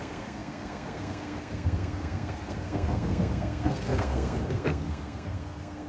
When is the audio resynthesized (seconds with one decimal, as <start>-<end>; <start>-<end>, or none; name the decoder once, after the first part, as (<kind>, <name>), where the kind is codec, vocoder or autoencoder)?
0.0-5.9 (codec, SNAC)